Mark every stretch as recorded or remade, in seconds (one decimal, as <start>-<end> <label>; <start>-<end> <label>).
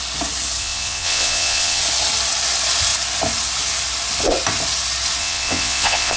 0.0-0.6 recorded; 0.6-1.8 remade; 1.8-5.2 recorded; 5.2-6.2 remade